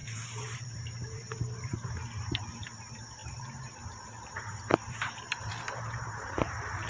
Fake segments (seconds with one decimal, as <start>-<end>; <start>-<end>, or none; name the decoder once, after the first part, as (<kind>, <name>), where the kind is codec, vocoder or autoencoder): 0.0-6.9 (vocoder, BigVGAN v2)